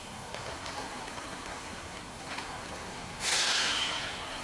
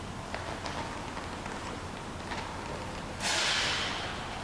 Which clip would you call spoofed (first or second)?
first